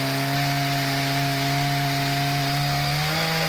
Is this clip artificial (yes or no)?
no